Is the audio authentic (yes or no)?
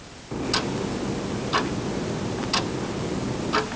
yes